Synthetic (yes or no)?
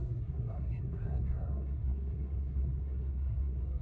yes